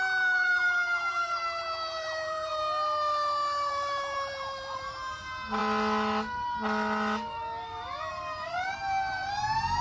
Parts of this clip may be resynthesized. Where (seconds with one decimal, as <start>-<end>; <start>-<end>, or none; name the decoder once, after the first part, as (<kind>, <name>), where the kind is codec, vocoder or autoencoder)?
0.0-2.5 (vocoder, BigVGAN v2); 3.7-5.6; 8.1-9.8